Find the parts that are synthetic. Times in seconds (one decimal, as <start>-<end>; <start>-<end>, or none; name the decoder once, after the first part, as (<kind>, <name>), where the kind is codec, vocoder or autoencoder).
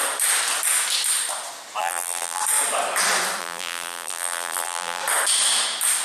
1.8-2.4 (vocoder, BigVGAN v2); 3.4-5.0